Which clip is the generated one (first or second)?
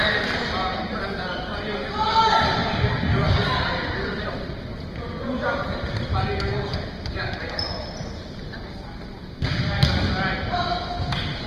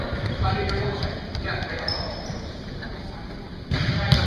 second